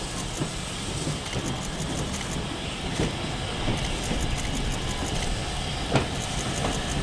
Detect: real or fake real